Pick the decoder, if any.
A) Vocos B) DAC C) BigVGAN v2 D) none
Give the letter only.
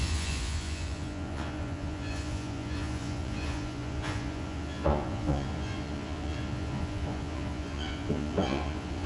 A